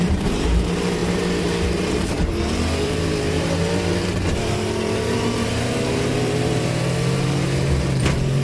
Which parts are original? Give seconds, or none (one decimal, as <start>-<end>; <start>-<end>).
none